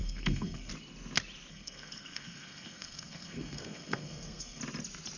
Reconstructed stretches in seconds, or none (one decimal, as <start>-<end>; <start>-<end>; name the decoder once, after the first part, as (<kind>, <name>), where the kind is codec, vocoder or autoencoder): 0.0-0.7 (codec, SNAC); 1.5-4.6